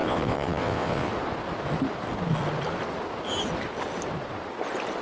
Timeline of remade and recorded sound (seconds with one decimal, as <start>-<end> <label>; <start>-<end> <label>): 0.0-1.1 remade; 1.1-5.0 recorded